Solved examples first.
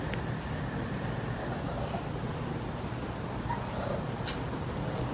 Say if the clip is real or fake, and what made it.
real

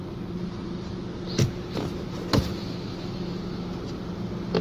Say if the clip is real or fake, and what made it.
real